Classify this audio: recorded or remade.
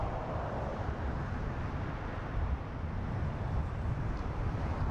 recorded